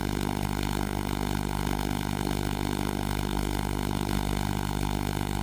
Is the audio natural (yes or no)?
no